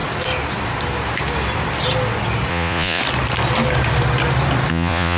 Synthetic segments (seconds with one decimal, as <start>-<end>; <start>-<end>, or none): 2.5-3.0; 4.7-5.2